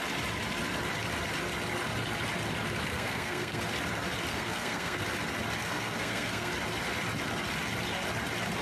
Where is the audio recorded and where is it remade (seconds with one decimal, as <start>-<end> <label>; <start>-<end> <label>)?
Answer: 0.0-2.9 recorded; 2.9-3.6 remade; 3.6-4.3 recorded; 4.3-5.0 remade; 5.0-5.6 recorded; 5.6-6.5 remade; 6.5-8.6 recorded

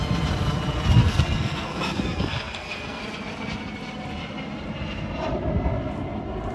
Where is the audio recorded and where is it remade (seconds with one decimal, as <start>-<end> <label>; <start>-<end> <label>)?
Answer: 0.0-1.0 recorded; 1.0-3.0 remade; 3.0-6.5 recorded

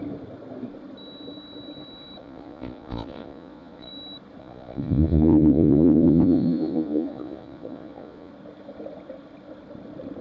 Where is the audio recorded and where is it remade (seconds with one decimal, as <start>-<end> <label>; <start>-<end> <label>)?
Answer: 0.0-2.2 recorded; 2.2-3.9 remade; 3.9-4.4 recorded; 4.4-8.3 remade; 8.3-10.2 recorded

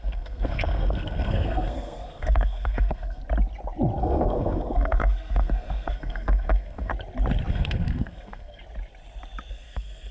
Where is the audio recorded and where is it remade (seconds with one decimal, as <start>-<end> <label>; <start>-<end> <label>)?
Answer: 0.0-3.2 remade; 3.2-4.0 recorded; 4.0-6.9 remade; 6.9-7.5 recorded; 7.5-8.6 remade; 8.6-9.5 recorded; 9.5-10.1 remade